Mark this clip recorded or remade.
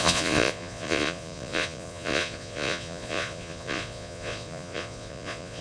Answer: remade